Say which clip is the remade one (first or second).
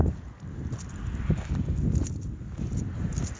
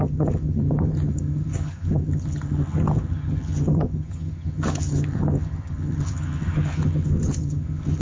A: second